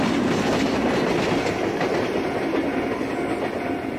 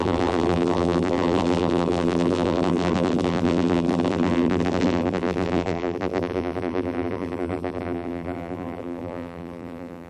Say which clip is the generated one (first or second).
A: second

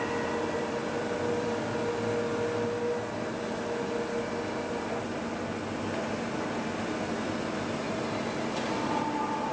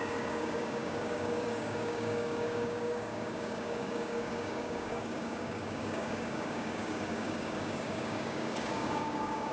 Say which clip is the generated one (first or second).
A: second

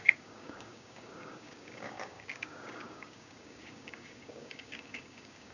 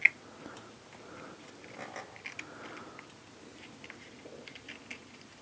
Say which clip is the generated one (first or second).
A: first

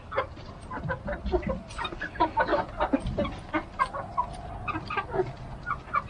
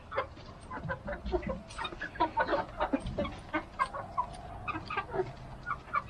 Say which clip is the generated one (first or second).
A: first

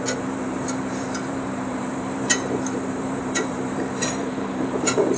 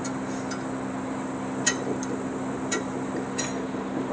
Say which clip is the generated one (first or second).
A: first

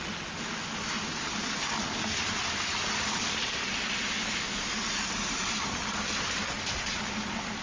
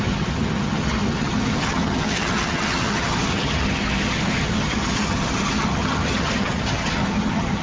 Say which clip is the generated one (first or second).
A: second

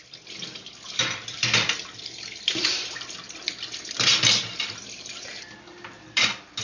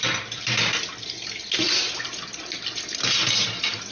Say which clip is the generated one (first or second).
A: first